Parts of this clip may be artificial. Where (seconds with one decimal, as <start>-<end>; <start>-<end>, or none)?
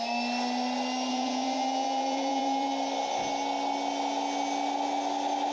1.1-2.7